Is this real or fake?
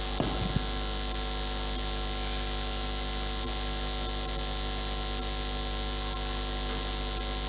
real